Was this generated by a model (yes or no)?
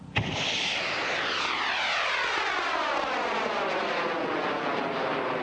no